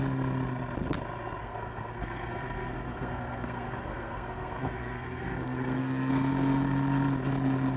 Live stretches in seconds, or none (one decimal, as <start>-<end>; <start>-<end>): 0.0-1.4; 6.1-7.8